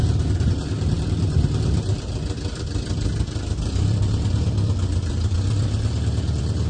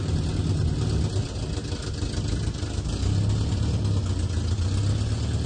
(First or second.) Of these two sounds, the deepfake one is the first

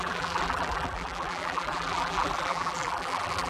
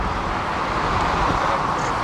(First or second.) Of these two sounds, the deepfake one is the first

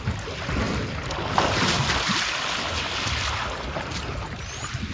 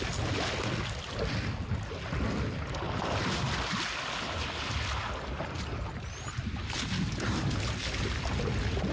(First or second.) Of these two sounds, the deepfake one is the first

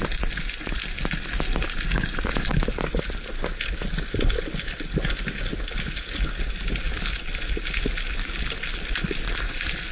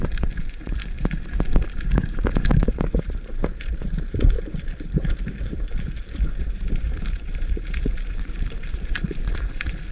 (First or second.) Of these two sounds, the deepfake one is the second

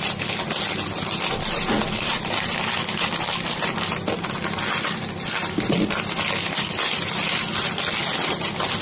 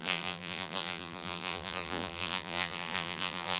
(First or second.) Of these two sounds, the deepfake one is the second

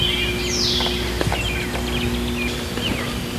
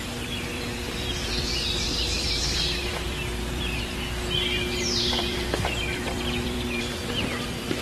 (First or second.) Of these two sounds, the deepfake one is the second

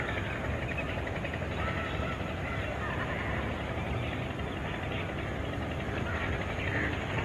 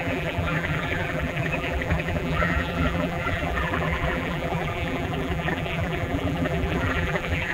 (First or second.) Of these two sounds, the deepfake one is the second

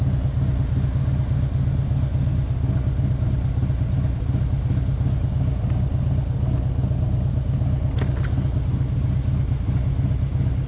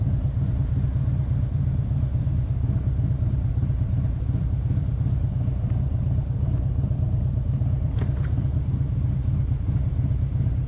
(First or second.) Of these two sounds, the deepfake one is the second